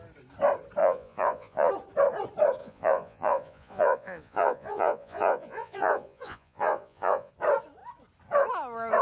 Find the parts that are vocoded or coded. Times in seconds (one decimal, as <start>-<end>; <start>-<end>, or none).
0.8-1.7; 2.6-7.3